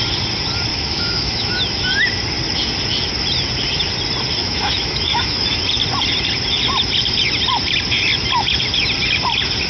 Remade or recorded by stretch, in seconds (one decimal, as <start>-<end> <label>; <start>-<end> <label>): 0.0-0.7 recorded; 0.7-1.6 remade; 1.6-4.4 recorded; 4.4-5.6 remade; 5.6-9.7 recorded